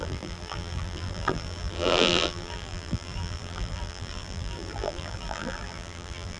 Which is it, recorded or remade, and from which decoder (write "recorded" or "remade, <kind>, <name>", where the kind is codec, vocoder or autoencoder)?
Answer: remade, vocoder, BigVGAN v2